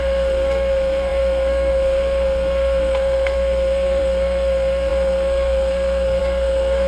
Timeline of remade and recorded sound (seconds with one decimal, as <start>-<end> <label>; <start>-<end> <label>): 0.0-6.9 remade